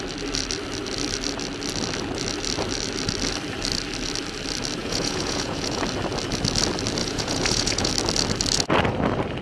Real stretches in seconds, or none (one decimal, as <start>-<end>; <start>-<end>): 0.0-4.8; 5.8-7.0; 7.9-9.4